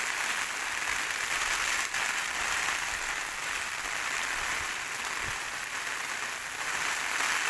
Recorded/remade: recorded